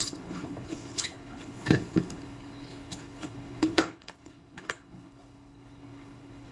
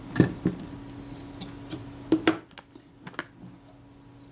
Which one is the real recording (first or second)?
second